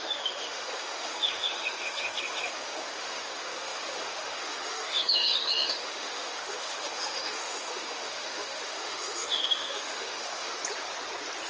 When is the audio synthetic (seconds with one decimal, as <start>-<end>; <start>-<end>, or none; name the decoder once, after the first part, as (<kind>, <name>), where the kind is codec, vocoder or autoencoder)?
0.0-10.6 (autoencoder, DAC-VAE)